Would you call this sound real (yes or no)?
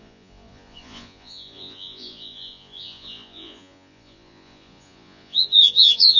no